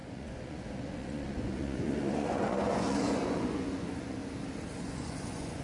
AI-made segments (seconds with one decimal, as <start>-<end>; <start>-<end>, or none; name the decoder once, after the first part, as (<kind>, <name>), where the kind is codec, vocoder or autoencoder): 0.0-4.2 (vocoder, Vocos); 4.8-5.6